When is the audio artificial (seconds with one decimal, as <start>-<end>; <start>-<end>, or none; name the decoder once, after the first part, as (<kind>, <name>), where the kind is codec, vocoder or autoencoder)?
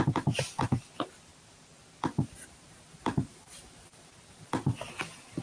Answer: 1.3-4.5 (vocoder, BigVGAN v2)